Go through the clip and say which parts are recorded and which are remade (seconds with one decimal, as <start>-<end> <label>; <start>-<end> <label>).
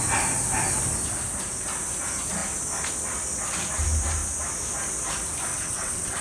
0.0-5.5 recorded; 5.5-6.2 remade